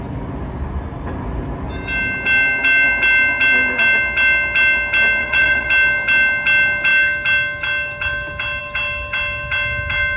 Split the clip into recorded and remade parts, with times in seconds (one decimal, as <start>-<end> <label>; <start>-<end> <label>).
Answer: 0.0-5.2 recorded; 5.2-5.7 remade; 5.7-10.2 recorded